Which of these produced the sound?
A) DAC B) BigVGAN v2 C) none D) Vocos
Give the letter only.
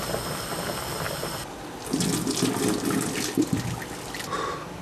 C